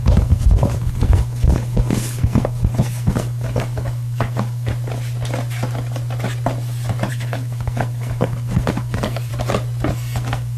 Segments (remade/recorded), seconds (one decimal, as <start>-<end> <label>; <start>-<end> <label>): 0.0-4.7 remade; 4.7-7.1 recorded; 7.1-9.3 remade; 9.3-9.9 recorded; 9.9-10.6 remade